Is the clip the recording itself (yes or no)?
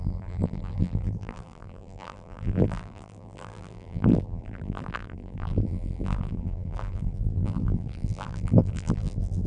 no